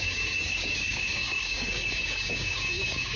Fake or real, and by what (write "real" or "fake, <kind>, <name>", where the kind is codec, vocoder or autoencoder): fake, codec, DAC